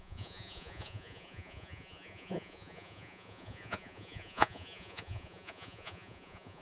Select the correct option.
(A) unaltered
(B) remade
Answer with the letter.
B